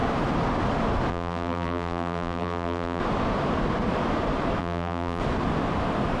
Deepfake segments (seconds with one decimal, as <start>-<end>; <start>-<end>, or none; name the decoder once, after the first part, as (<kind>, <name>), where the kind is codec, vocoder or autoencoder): 1.1-3.0 (vocoder, BigVGAN v2); 4.6-5.2